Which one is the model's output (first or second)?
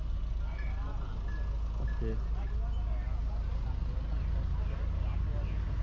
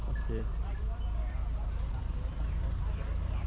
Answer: second